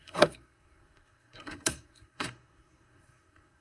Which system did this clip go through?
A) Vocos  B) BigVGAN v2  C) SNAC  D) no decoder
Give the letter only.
C